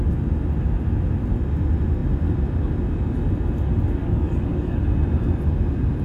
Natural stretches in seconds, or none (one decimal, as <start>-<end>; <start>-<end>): 0.0-4.0; 4.8-6.0